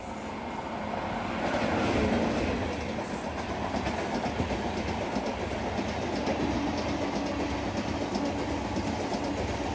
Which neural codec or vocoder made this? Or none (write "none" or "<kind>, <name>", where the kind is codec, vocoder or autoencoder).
none